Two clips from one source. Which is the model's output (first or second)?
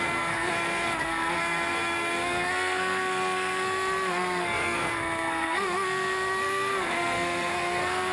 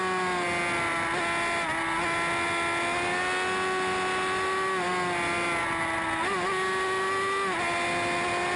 first